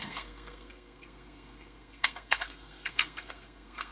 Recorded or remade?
remade